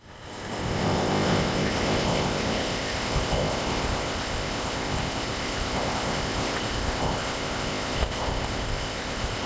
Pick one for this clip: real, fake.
fake